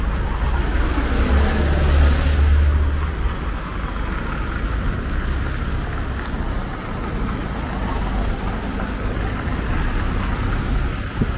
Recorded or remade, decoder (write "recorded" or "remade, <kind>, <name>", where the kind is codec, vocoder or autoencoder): recorded